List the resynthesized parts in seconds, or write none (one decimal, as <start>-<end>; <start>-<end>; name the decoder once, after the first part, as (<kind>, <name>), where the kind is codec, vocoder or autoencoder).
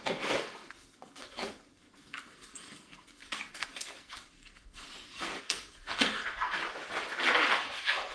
0.0-6.6 (codec, SNAC); 7.5-8.1